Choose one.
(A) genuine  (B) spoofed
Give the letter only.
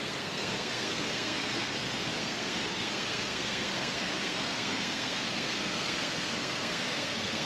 B